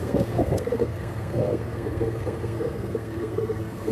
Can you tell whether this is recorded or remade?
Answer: remade